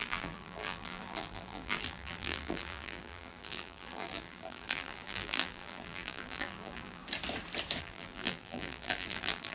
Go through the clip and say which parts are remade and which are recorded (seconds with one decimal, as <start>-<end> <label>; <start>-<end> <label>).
0.0-7.0 remade; 7.0-7.8 recorded; 7.8-9.5 remade